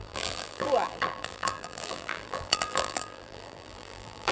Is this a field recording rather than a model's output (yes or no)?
no